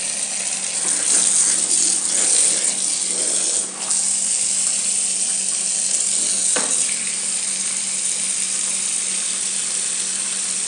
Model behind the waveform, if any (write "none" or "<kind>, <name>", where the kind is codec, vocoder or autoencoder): none